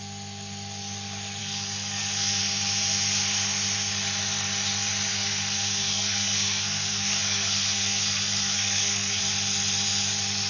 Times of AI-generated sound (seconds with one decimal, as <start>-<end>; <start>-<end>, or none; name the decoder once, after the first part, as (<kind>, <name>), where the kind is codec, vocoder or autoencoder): 1.4-2.4 (codec, SNAC); 5.1-9.2